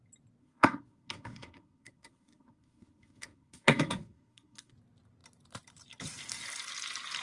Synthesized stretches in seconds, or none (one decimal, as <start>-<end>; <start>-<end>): 0.4-4.7